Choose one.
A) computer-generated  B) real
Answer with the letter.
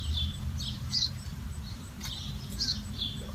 A